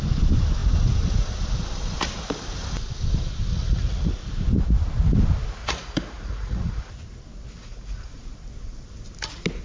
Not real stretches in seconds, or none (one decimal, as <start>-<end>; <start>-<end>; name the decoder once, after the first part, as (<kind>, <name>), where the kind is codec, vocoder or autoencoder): 3.5-4.1 (vocoder, Vocos); 5.6-6.9; 7.6-8.2